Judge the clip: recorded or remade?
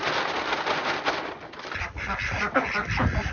recorded